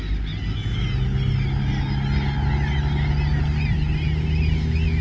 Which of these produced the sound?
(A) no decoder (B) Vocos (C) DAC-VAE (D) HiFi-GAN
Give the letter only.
A